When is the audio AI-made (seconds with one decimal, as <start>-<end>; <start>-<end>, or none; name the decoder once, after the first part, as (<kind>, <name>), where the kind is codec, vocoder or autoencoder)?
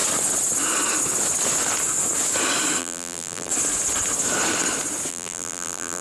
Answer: 2.8-3.5 (vocoder, BigVGAN v2); 5.1-6.0